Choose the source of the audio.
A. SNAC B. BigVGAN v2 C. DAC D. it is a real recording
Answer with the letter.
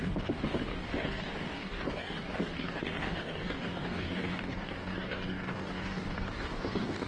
C